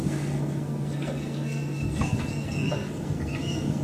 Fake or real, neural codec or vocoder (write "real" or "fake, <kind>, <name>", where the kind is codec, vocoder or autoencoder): fake, codec, SNAC